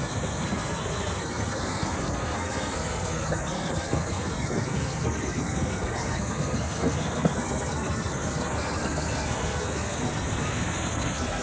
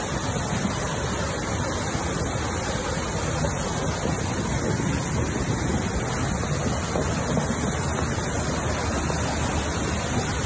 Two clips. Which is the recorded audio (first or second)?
second